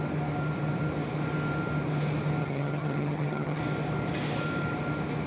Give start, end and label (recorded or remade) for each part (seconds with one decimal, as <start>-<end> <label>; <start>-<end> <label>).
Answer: 0.0-2.4 recorded; 2.4-3.6 remade; 3.6-5.3 recorded

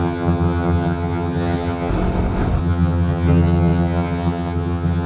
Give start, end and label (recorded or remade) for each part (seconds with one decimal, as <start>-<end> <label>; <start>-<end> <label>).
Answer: 0.0-1.9 remade; 1.9-2.6 recorded; 2.6-5.1 remade

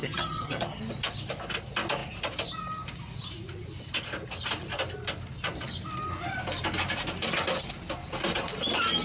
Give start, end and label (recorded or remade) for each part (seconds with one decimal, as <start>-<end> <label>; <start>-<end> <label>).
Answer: 0.0-0.8 remade; 0.8-9.0 recorded

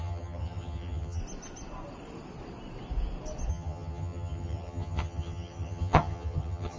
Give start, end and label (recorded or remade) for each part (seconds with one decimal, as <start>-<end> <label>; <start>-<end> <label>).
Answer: 0.0-1.2 remade; 1.2-3.5 recorded; 3.5-6.8 remade

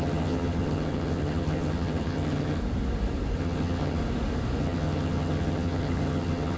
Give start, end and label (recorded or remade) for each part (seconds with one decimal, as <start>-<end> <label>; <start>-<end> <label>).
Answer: 0.0-2.6 remade; 2.6-3.4 recorded; 3.4-4.0 remade; 4.0-4.6 recorded; 4.6-6.6 remade